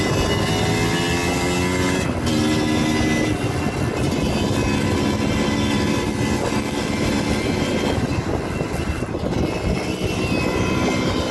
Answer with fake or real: real